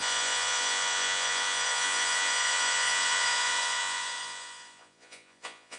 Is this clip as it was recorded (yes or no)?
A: no